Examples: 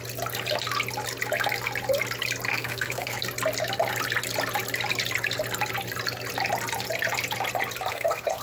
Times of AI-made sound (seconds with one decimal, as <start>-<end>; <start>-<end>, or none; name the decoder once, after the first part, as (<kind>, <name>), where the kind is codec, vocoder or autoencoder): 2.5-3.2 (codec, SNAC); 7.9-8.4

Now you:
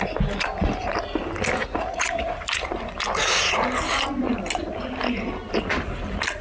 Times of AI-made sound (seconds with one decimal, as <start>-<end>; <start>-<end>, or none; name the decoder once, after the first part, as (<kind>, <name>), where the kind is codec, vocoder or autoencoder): 1.6-2.7 (vocoder, Vocos)

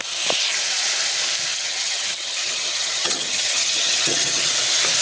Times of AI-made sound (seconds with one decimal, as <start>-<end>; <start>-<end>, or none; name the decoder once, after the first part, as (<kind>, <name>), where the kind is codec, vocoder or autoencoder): 1.5-4.5 (vocoder, HiFi-GAN)